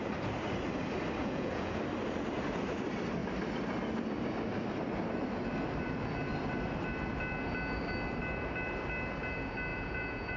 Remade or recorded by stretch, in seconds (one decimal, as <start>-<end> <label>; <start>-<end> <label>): 0.0-1.2 recorded; 1.2-1.8 remade; 1.8-9.7 recorded; 9.7-10.4 remade